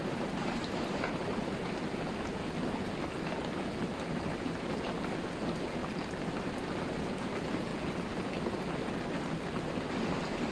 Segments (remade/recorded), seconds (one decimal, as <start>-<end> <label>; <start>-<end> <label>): 0.0-2.3 remade; 2.3-10.5 recorded